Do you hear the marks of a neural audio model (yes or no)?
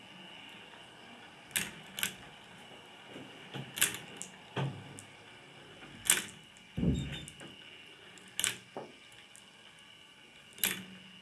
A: no